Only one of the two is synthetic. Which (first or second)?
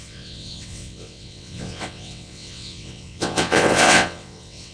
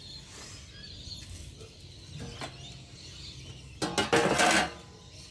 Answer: first